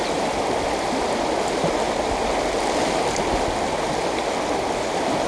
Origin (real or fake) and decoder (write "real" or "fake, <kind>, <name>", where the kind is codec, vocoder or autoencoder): real